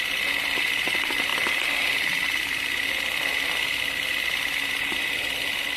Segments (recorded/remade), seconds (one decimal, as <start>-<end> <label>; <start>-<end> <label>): 0.0-5.8 recorded